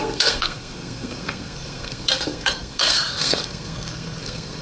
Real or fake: fake